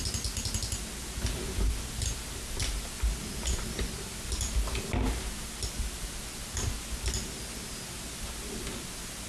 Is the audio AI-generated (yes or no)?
no